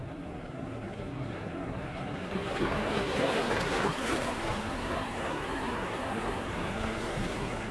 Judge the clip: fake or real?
fake